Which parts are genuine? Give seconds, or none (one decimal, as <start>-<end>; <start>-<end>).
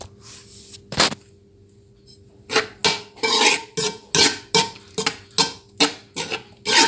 0.0-6.9